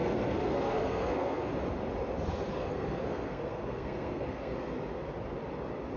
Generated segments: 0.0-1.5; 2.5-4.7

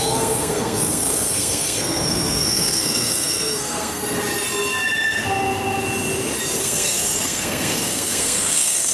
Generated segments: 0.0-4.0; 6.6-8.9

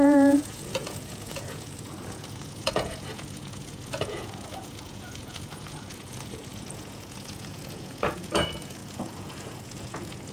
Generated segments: 0.0-10.3